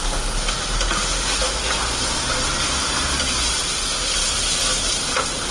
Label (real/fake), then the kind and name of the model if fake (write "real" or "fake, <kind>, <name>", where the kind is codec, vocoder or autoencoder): real